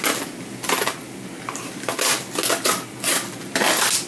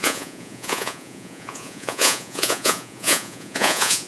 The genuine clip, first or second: first